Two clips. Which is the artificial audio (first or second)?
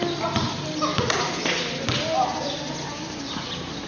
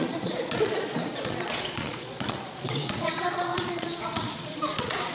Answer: second